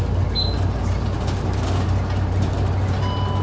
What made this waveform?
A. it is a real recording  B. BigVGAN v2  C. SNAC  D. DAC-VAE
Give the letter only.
A